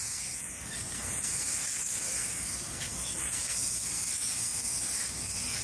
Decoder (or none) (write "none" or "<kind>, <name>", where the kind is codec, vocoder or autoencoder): codec, SNAC